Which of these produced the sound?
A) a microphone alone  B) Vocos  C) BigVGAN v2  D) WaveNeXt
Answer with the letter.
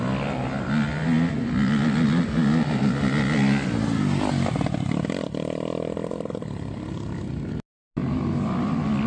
A